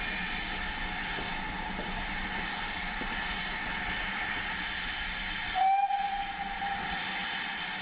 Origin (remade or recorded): recorded